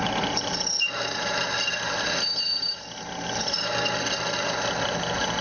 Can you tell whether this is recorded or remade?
recorded